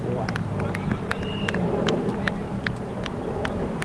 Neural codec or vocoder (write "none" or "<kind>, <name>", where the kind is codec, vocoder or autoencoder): none